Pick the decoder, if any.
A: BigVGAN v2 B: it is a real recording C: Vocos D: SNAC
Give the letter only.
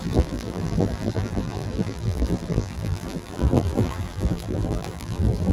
A